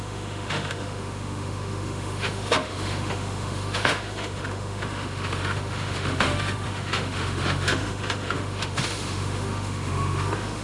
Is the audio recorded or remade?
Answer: remade